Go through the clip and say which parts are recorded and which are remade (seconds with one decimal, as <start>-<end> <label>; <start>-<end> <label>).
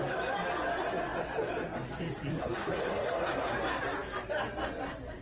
0.0-2.3 recorded; 2.3-3.5 remade; 3.5-5.2 recorded